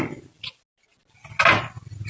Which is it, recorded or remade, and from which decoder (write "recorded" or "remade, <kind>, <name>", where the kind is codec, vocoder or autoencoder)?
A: recorded